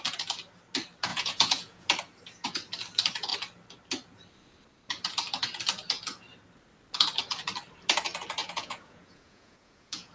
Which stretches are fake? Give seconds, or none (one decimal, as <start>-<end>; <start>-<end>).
1.1-1.9; 8.4-10.1